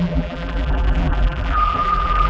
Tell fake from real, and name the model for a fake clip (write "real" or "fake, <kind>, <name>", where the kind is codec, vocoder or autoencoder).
fake, vocoder, BigVGAN v2